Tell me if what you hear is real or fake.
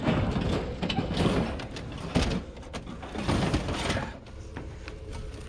real